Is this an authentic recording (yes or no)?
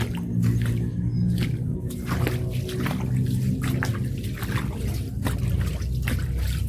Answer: yes